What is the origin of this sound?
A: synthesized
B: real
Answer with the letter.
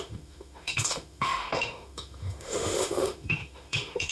A